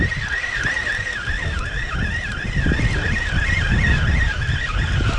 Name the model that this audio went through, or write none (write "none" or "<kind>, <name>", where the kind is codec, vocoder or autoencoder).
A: none